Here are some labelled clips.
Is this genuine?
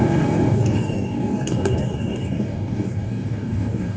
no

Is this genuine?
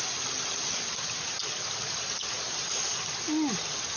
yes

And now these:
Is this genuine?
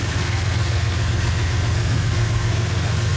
no